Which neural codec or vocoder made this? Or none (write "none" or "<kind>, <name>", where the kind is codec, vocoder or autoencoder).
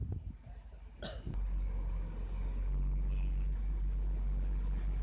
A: none